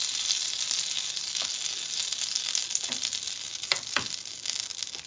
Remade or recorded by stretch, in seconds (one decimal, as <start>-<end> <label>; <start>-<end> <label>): 0.0-5.1 recorded